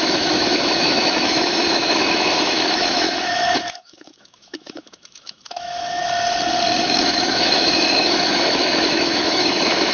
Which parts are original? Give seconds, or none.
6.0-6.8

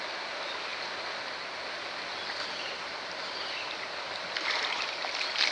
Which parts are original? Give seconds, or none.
0.0-5.5

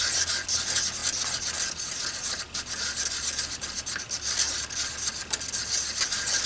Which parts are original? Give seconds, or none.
0.0-6.5

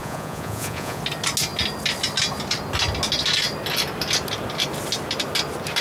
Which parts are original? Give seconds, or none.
1.0-5.8